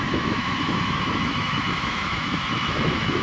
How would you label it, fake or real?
fake